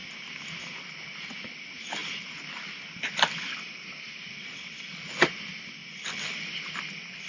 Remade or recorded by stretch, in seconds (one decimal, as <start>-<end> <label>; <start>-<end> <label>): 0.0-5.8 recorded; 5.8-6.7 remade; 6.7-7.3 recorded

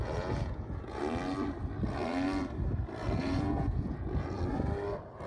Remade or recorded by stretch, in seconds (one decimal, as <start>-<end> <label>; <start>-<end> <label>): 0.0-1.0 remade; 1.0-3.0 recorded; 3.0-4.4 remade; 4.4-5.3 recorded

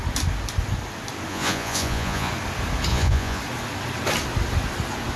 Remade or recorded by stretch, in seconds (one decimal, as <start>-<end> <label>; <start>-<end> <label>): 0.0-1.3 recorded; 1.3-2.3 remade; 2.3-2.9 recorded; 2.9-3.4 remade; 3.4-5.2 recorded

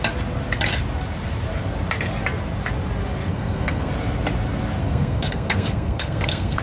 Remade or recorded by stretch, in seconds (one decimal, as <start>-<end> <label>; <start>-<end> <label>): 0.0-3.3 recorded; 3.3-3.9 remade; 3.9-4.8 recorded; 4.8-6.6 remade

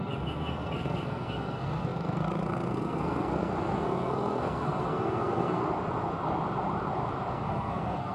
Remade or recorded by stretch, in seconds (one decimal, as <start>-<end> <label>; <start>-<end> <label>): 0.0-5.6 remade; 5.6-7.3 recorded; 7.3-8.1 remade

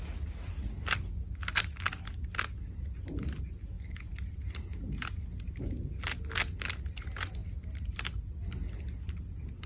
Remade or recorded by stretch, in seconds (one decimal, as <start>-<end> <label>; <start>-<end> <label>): 0.0-3.6 recorded; 3.6-4.1 remade; 4.1-9.7 recorded